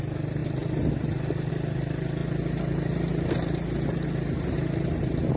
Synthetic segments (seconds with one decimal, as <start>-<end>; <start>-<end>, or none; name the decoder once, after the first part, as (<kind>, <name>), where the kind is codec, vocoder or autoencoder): none